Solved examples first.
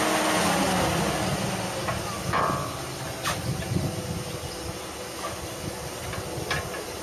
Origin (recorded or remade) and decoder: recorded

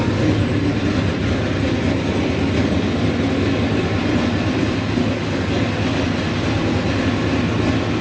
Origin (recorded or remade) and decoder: recorded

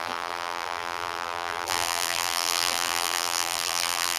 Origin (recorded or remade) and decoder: remade, vocoder, BigVGAN v2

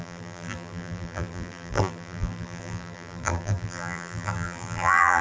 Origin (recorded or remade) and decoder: remade, vocoder, BigVGAN v2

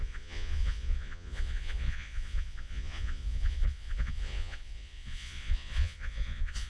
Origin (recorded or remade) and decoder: remade, vocoder, Vocos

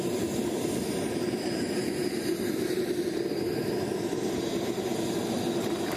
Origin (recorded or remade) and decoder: remade, vocoder, BigVGAN v2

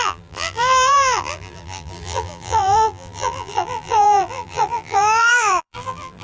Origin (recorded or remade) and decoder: remade, vocoder, BigVGAN v2